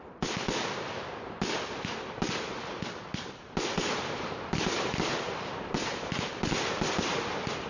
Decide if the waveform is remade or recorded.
recorded